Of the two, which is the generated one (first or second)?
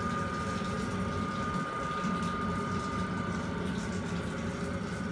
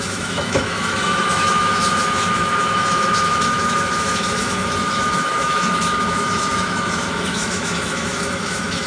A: second